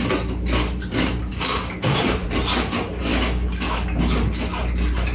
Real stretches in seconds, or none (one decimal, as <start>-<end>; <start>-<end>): 0.0-1.3; 2.0-3.1; 4.0-5.1